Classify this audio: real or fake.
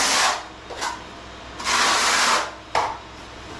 real